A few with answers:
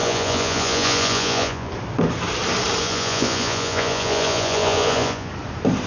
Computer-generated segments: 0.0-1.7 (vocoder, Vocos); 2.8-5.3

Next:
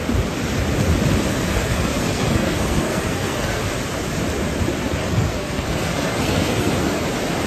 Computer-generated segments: 1.3-3.6 (codec, SNAC); 5.0-7.1

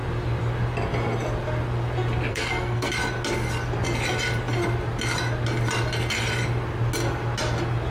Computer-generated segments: 2.3-2.9 (codec, SNAC)